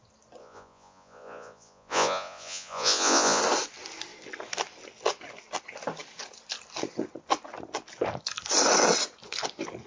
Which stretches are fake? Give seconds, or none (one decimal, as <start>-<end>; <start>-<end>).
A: 0.4-3.4